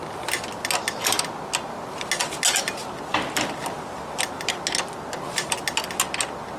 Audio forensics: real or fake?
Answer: real